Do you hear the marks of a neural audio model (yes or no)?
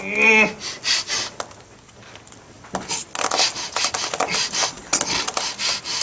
no